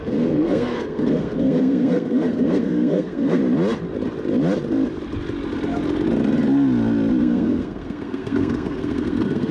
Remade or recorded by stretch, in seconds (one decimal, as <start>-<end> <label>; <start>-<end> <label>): 0.0-3.4 remade; 3.4-7.2 recorded; 7.2-9.5 remade